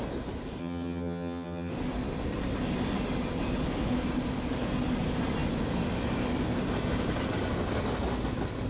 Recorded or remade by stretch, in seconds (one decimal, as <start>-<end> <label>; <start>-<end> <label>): 0.0-0.6 recorded; 0.6-1.7 remade; 1.7-8.7 recorded